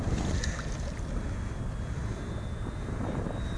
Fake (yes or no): no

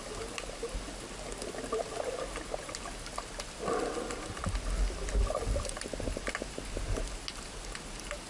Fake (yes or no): no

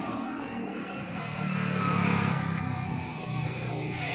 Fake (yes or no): yes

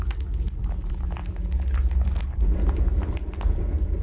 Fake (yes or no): no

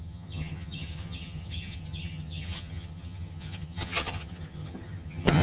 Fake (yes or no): yes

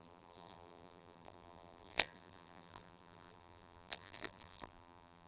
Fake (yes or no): yes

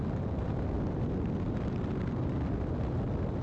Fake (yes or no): no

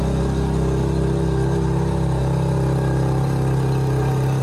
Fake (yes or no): no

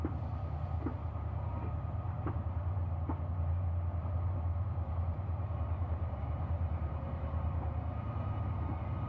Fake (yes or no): yes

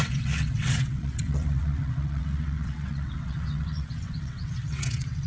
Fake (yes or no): yes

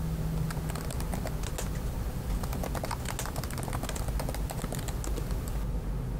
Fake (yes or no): no